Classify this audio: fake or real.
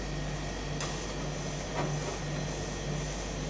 real